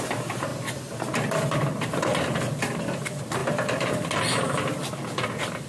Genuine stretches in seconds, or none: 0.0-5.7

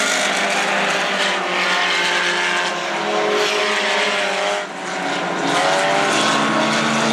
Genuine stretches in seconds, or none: 0.0-7.1

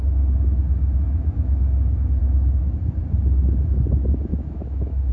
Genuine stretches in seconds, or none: 0.0-2.2; 2.8-4.3

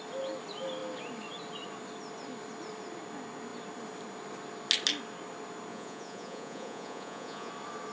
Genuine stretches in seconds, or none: 0.0-5.7; 7.5-7.9

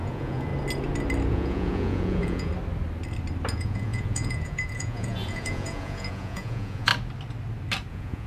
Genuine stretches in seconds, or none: 0.5-1.3; 2.5-3.5; 6.9-7.9

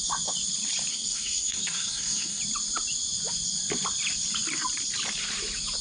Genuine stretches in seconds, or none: 0.0-0.9; 2.4-5.8